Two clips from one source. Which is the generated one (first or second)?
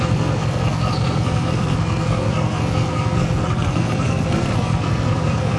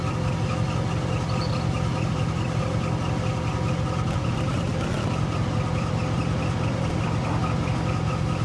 first